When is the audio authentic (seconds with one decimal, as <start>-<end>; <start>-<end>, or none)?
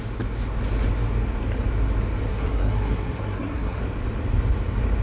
0.0-2.3; 3.8-5.0